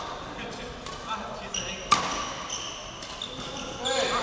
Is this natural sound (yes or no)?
yes